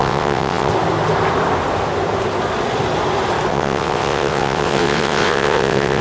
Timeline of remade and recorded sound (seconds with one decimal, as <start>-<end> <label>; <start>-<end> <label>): 0.0-0.7 remade; 0.7-3.5 recorded; 3.5-6.0 remade